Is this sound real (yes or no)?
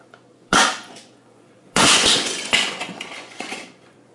no